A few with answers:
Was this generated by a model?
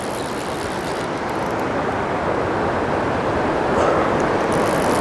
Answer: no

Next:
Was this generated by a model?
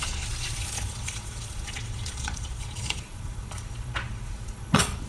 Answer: yes